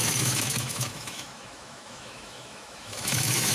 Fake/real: fake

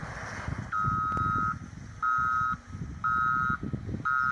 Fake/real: real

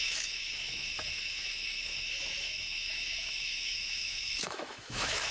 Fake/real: fake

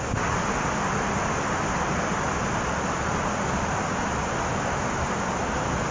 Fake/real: real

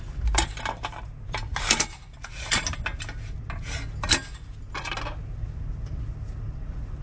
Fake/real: real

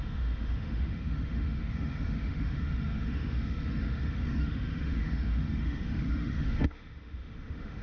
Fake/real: fake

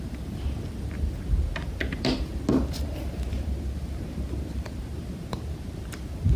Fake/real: real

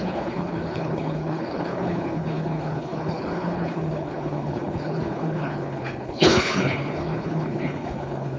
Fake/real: fake